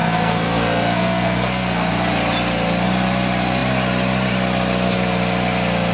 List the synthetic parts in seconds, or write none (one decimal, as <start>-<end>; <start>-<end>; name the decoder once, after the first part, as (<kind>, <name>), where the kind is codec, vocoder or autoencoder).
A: 0.0-1.9 (codec, SNAC)